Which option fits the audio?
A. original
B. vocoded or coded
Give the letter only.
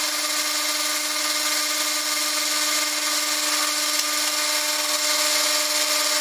A